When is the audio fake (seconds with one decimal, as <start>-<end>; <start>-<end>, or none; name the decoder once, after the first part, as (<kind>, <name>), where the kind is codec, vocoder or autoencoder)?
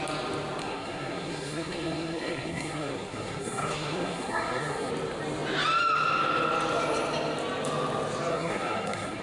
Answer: 0.6-4.9 (codec, SNAC); 8.3-9.2